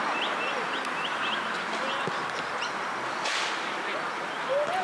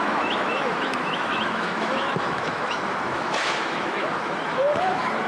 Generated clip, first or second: second